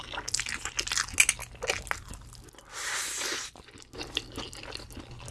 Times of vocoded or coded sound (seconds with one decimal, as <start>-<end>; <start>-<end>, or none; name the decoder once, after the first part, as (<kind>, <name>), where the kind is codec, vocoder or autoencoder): none